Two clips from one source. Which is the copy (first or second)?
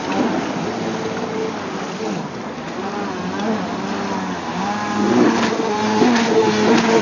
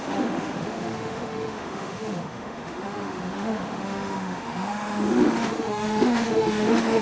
second